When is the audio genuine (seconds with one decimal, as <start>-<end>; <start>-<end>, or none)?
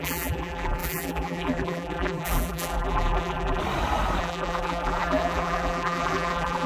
3.6-4.2